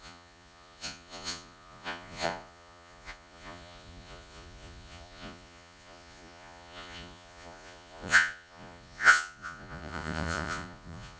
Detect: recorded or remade remade